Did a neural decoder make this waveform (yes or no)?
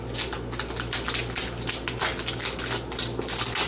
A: no